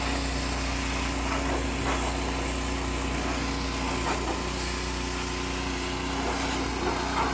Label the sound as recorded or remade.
recorded